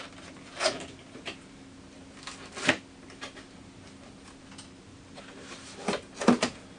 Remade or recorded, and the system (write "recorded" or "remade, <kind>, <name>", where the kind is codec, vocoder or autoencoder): recorded